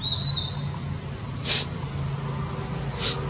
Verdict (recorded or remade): recorded